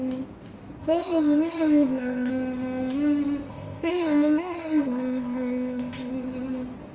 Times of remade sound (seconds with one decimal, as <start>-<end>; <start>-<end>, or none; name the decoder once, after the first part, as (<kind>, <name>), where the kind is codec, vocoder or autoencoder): 0.8-2.3 (codec, ZipCodec); 3.5-6.1